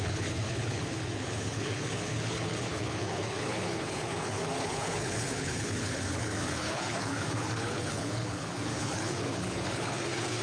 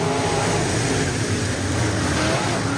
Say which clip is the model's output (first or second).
first